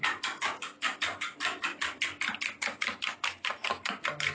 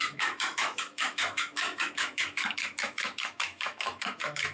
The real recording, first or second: first